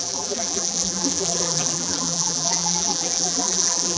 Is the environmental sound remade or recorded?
remade